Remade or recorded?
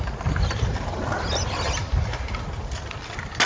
recorded